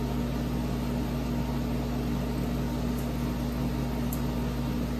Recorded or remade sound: recorded